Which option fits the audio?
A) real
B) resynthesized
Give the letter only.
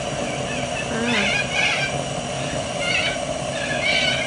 A